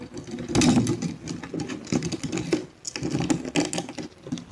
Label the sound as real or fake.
real